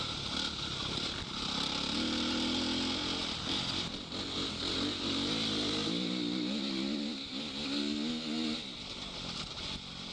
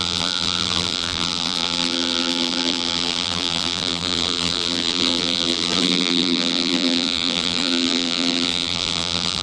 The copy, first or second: second